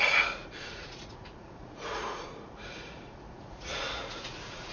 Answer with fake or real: fake